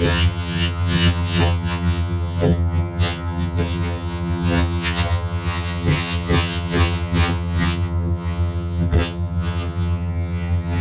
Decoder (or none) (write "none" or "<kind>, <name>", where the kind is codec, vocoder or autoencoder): vocoder, HiFi-GAN